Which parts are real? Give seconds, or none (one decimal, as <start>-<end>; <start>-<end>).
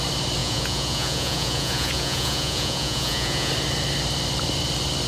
0.0-0.4; 3.5-5.1